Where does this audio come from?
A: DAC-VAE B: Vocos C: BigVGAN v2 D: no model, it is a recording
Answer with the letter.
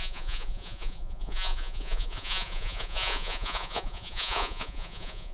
B